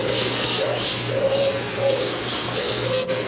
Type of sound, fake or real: fake